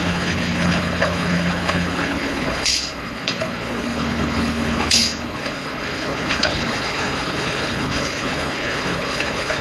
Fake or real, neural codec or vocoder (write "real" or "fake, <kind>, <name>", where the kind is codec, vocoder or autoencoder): fake, codec, HILCodec